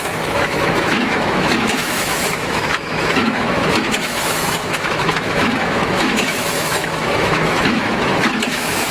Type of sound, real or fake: fake